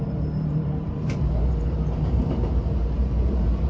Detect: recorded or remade remade